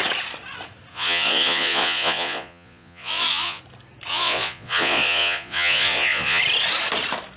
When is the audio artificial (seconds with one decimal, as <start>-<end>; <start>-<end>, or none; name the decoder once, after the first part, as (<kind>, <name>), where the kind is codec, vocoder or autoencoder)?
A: 0.9-3.6 (vocoder, Vocos); 4.1-6.4